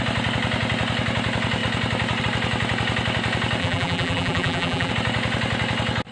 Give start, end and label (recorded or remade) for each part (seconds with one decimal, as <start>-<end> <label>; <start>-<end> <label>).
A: 0.0-3.6 recorded; 3.6-4.9 remade; 4.9-6.1 recorded